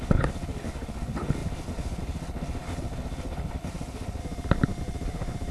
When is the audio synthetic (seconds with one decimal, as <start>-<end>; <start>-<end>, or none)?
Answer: 0.0-4.2